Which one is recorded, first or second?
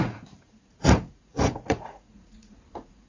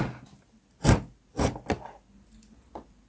second